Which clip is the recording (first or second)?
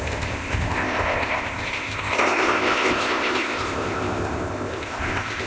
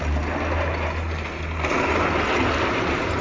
second